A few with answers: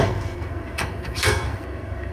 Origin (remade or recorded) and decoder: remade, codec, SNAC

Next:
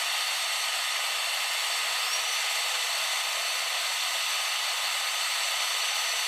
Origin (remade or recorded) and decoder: recorded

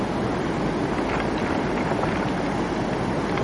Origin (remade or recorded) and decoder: recorded